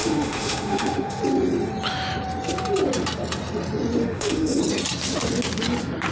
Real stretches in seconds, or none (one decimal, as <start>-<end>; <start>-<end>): 1.2-4.0; 4.6-6.1